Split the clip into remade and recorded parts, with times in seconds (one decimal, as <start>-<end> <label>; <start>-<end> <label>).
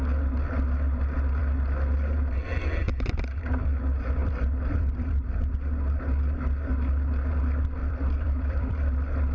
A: 0.0-4.2 recorded; 4.2-5.5 remade; 5.5-6.7 recorded; 6.7-7.3 remade; 7.3-7.8 recorded; 7.8-8.9 remade; 8.9-9.3 recorded